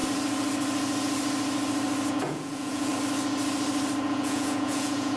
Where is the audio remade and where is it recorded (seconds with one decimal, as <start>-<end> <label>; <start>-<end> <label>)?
0.0-2.1 recorded; 2.1-2.9 remade; 2.9-4.1 recorded; 4.1-5.2 remade